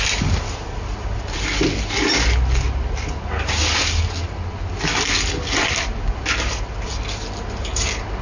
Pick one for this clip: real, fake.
real